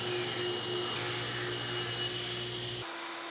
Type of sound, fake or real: real